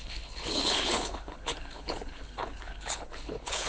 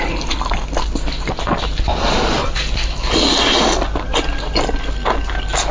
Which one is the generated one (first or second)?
first